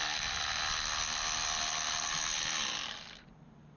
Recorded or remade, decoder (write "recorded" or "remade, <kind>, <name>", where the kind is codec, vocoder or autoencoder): recorded